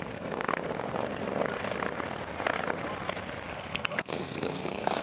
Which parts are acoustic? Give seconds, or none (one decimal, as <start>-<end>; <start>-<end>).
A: 0.5-3.5